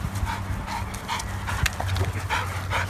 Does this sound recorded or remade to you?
recorded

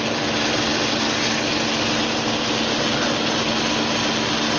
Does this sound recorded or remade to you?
recorded